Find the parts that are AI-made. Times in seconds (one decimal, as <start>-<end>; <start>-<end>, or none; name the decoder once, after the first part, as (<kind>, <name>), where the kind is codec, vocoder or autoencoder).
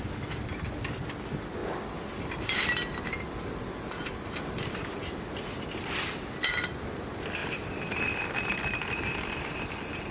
none